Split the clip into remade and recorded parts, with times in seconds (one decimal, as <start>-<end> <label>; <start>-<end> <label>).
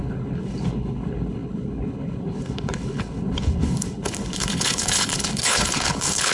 0.0-6.3 remade